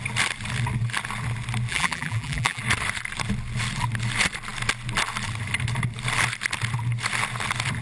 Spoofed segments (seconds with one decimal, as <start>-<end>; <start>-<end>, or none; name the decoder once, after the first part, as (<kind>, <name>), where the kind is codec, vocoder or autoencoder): 1.7-2.6 (vocoder, BigVGAN v2)